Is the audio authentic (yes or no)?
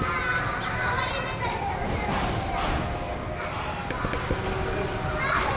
yes